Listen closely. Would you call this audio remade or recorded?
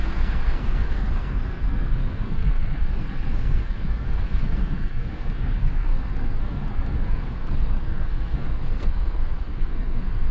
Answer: remade